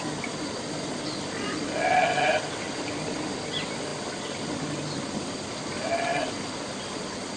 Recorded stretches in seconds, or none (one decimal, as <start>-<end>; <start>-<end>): 0.0-7.4